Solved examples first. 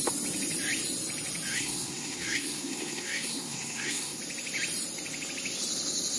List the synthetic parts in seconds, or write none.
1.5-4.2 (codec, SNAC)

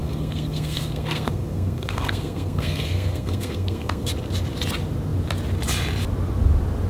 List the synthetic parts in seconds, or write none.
0.0-4.1 (codec, SNAC)

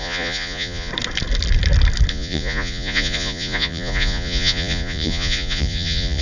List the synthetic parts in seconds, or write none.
0.0-0.9 (vocoder, Vocos); 2.1-6.2

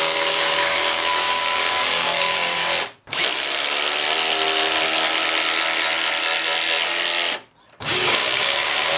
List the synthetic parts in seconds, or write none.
0.0-2.6 (codec, DAC); 7.8-9.0

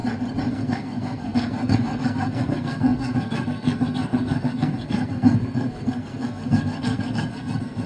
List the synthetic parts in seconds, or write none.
0.5-7.9 (codec, SNAC)

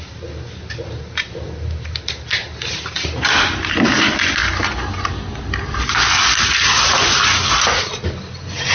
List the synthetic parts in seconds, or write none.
none

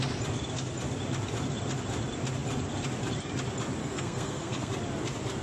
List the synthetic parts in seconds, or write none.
3.8-4.7 (codec, SNAC)